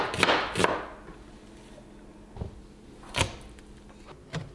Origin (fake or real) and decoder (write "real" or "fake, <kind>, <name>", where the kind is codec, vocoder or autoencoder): real